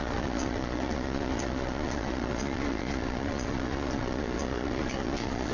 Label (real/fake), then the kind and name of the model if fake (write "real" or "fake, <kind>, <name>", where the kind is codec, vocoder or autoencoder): fake, vocoder, Vocos